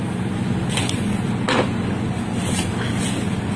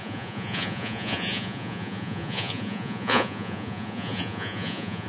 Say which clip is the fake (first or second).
second